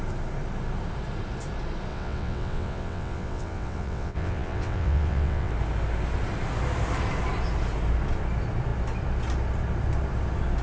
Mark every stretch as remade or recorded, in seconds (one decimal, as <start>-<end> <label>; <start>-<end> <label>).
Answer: 0.0-1.9 recorded; 1.9-5.5 remade; 5.5-10.6 recorded